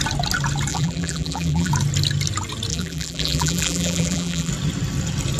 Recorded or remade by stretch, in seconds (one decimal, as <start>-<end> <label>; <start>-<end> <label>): 0.0-0.7 recorded; 0.7-1.7 remade; 1.7-2.7 recorded; 2.7-4.5 remade; 4.5-5.4 recorded